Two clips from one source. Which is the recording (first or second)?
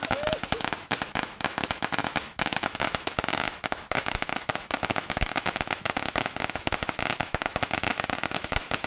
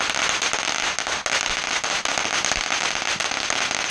second